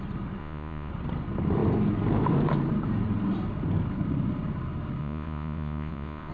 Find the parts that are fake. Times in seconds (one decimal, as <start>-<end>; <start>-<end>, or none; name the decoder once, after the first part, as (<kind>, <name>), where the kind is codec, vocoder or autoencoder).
0.4-0.9 (vocoder, Vocos); 5.0-6.3

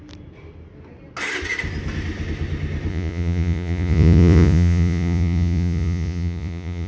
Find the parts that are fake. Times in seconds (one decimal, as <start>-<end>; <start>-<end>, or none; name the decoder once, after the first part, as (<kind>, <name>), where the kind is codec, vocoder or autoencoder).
2.9-6.9 (vocoder, Vocos)

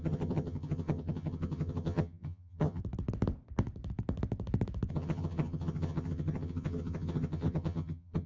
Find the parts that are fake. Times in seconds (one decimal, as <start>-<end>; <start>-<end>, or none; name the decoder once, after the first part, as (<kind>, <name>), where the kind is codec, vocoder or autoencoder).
0.0-2.8 (vocoder, HiFi-GAN); 4.9-8.3

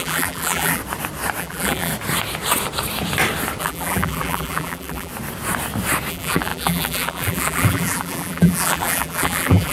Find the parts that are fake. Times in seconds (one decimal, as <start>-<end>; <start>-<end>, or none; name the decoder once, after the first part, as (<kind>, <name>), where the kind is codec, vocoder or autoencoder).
0.0-0.8 (vocoder, BigVGAN v2); 1.4-1.9; 3.6-5.1; 6.1-9.7

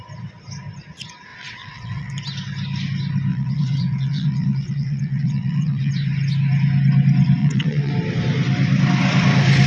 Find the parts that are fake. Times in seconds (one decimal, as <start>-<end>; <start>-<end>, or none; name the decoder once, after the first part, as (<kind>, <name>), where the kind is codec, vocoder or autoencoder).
1.3-2.1 (vocoder, WaveNeXt); 3.3-5.9; 7.4-7.9

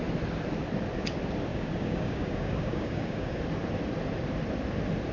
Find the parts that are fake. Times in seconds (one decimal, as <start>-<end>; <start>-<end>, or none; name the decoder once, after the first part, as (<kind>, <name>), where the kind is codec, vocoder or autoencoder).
1.5-3.4 (codec, DAC)

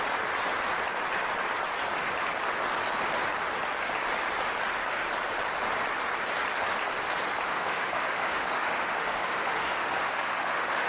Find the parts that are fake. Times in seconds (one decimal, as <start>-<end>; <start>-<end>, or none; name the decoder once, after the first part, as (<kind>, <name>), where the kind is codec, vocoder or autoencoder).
7.5-10.9 (autoencoder, DAC-VAE)

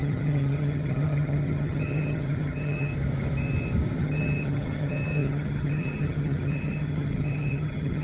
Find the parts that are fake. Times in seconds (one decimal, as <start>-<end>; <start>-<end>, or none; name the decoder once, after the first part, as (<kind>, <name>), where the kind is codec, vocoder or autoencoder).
0.0-2.9 (vocoder, HiFi-GAN); 4.0-8.0